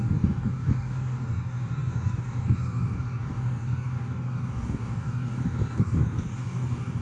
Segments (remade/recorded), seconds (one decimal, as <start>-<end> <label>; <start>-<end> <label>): 0.0-7.0 remade